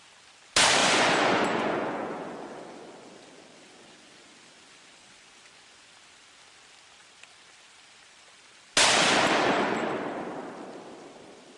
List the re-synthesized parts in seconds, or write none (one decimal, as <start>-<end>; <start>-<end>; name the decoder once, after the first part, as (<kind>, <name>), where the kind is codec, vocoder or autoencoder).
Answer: 0.8-5.9 (vocoder, Vocos)